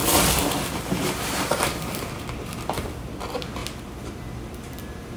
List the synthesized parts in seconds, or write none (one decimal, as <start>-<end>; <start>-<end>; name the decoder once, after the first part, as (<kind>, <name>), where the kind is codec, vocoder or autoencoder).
0.0-3.1 (vocoder, BigVGAN v2); 3.6-5.2